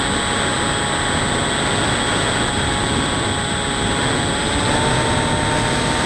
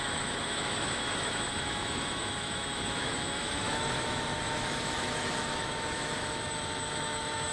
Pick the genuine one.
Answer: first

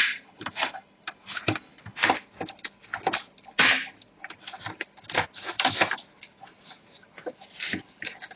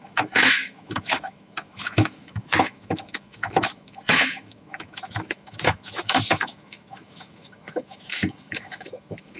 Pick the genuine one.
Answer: first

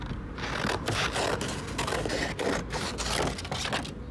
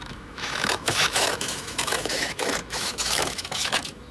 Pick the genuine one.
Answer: first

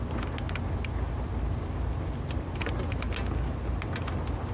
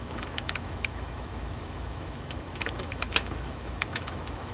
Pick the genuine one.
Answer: first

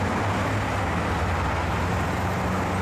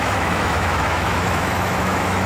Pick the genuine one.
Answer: first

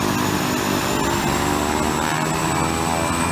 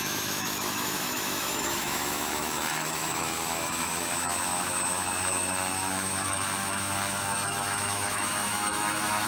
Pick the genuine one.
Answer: first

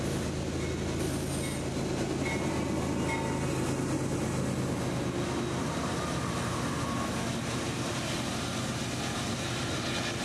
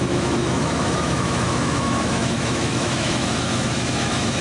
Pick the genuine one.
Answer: first